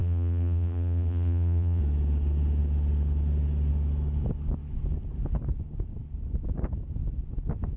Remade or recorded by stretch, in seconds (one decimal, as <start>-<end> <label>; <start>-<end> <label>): 0.0-1.8 remade; 1.8-7.8 recorded